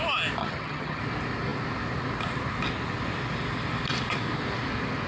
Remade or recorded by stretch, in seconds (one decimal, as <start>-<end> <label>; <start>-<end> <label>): 0.0-0.4 recorded; 0.4-1.0 remade; 1.0-5.1 recorded